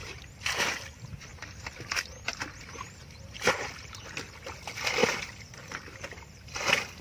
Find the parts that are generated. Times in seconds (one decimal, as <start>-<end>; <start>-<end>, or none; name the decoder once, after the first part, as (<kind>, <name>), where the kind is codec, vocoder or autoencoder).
0.0-0.6 (vocoder, BigVGAN v2); 1.3-2.7; 5.0-6.6